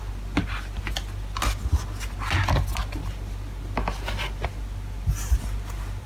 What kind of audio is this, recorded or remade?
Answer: recorded